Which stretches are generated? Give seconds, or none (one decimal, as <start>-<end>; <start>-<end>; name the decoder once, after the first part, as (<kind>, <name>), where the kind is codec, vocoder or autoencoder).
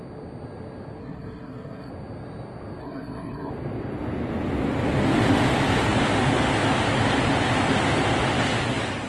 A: 1.0-1.9 (codec, SNAC); 2.8-3.5